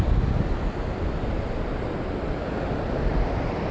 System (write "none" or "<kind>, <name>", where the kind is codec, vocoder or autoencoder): none